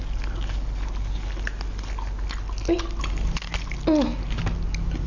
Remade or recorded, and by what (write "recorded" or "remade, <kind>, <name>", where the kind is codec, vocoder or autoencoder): recorded